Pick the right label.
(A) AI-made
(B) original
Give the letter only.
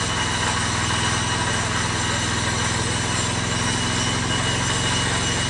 B